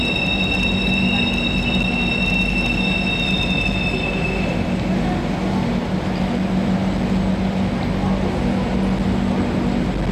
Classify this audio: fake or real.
real